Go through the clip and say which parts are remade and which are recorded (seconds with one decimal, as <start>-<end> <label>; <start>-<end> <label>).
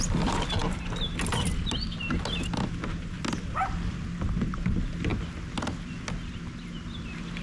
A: 0.0-7.4 recorded